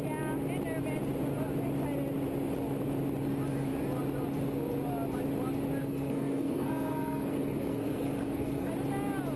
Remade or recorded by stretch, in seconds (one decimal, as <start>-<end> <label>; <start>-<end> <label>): 0.0-5.8 recorded; 5.8-8.7 remade; 8.7-9.4 recorded